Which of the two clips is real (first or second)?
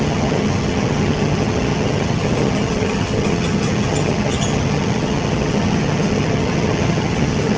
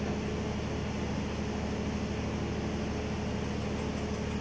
second